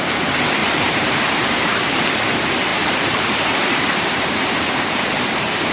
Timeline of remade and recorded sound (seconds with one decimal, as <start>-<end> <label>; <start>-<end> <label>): 0.0-0.6 recorded; 0.6-2.0 remade; 2.0-2.7 recorded; 2.7-5.7 remade